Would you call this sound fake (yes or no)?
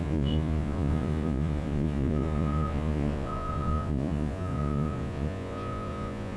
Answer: yes